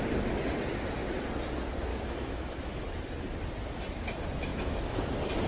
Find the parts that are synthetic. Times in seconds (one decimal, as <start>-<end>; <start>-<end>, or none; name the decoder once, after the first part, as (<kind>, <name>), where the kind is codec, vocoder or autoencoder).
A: 1.9-2.8 (autoencoder, DAC-VAE); 4.5-5.0